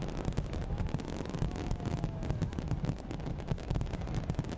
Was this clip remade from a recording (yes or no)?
no